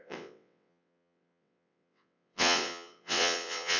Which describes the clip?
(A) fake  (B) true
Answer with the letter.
A